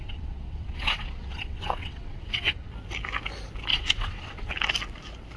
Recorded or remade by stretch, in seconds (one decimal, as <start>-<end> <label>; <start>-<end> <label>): 0.0-2.7 remade; 2.7-3.7 recorded; 3.7-4.5 remade; 4.5-5.4 recorded